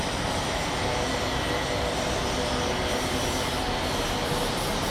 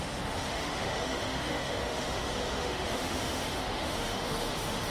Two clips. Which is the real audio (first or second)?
first